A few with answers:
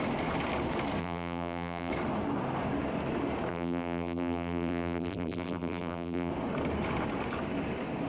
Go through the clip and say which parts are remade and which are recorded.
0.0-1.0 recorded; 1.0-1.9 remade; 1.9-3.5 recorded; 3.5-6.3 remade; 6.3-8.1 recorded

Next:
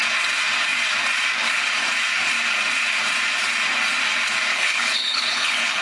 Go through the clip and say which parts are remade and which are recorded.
0.0-4.5 recorded; 4.5-5.8 remade

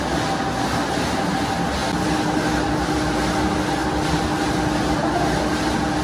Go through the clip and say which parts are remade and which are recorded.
0.0-6.0 recorded

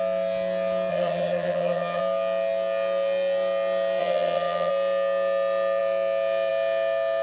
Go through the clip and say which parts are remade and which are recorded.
0.0-0.9 recorded; 0.9-2.0 remade; 2.0-4.0 recorded; 4.0-4.7 remade; 4.7-7.2 recorded

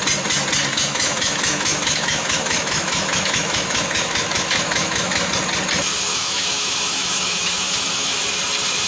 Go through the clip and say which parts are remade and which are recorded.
0.0-0.7 recorded; 0.7-5.3 remade; 5.3-6.1 recorded; 6.1-8.2 remade; 8.2-8.9 recorded

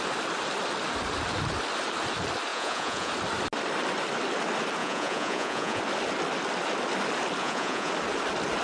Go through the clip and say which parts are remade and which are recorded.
0.0-2.5 recorded; 2.5-3.1 remade; 3.1-4.8 recorded; 4.8-5.8 remade; 5.8-7.4 recorded; 7.4-7.9 remade; 7.9-8.6 recorded